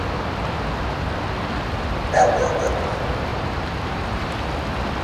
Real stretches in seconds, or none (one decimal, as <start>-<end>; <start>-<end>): 0.0-3.3; 4.3-5.0